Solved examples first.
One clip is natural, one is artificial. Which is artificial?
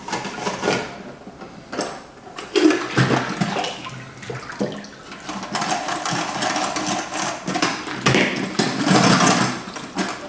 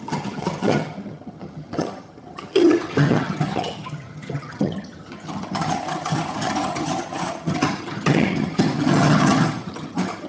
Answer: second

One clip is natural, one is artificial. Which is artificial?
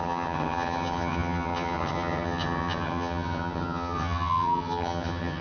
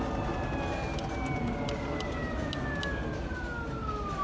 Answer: first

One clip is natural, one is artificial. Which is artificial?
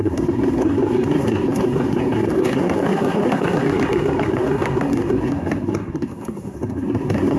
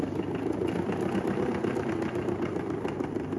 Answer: first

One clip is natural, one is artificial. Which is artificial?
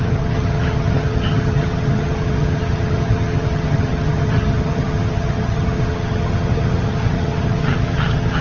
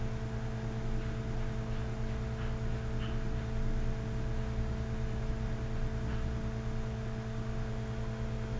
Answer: first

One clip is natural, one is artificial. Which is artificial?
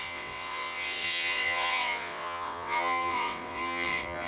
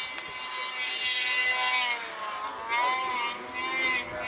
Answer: first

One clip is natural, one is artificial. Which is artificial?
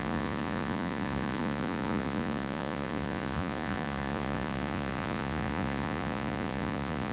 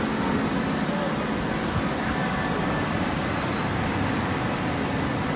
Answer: first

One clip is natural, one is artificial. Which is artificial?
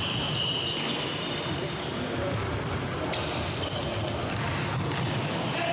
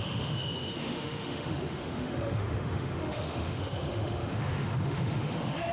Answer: second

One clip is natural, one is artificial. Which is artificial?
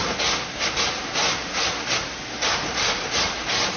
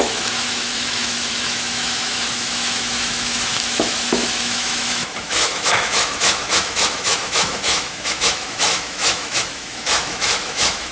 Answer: second